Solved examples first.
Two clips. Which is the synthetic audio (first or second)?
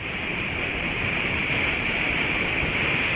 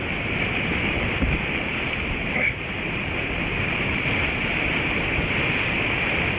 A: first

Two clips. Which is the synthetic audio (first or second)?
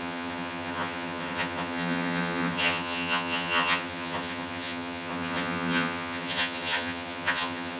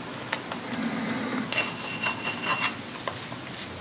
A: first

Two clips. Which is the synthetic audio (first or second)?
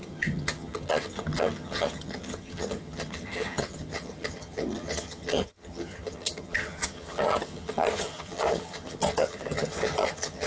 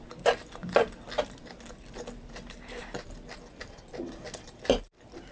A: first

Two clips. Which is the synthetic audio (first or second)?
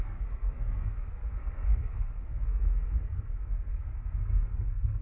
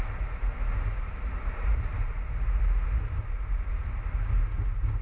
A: first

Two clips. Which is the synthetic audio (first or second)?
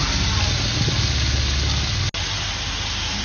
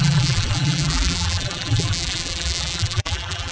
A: second